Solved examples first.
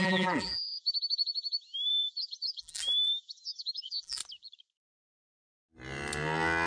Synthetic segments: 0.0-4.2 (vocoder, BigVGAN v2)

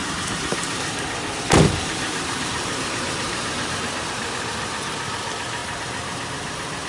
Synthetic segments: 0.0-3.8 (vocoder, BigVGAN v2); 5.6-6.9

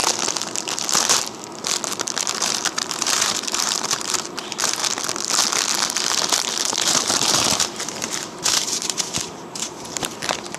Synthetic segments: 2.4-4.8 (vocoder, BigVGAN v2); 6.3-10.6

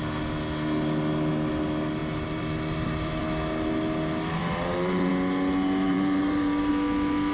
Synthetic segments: 2.0-3.2 (vocoder, BigVGAN v2); 4.4-5.1; 5.9-6.7

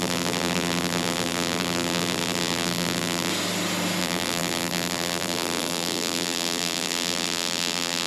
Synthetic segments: 0.0-3.3 (vocoder, BigVGAN v2); 4.0-8.1

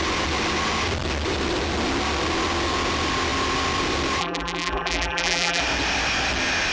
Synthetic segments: 4.2-5.6 (vocoder, BigVGAN v2)

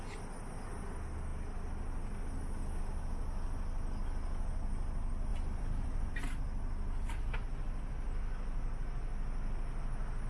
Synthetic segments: 5.3-6.1 (vocoder, BigVGAN v2)

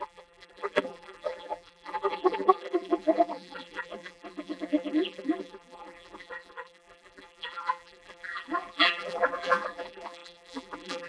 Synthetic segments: 0.0-11.1 (vocoder, BigVGAN v2)